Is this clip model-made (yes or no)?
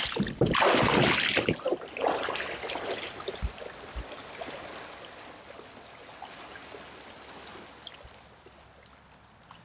no